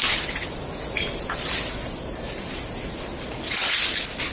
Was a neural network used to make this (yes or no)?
no